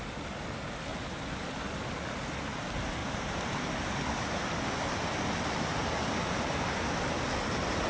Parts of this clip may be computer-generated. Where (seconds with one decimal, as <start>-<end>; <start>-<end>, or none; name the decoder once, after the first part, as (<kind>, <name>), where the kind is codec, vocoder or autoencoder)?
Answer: 0.9-1.5 (vocoder, BigVGAN v2); 3.0-4.7